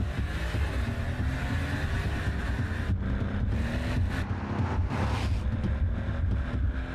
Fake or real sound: real